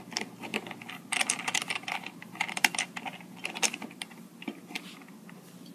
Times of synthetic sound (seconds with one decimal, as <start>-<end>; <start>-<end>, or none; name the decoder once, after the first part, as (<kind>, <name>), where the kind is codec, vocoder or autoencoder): none